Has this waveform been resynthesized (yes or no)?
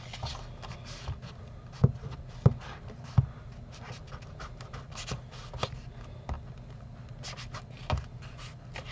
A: no